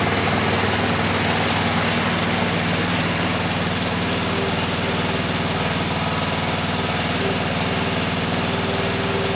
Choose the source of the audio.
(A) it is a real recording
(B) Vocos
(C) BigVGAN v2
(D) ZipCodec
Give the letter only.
A